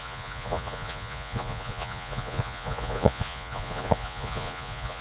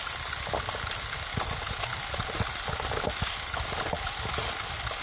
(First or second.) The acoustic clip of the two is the second